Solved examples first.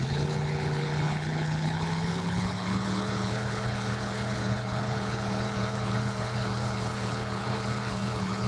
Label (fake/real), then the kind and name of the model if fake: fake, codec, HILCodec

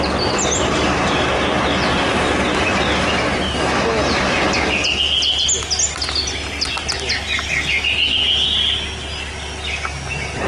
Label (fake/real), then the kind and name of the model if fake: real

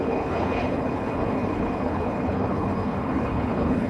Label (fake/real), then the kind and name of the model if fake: fake, codec, HILCodec